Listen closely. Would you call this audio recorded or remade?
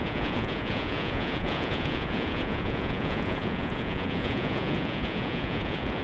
remade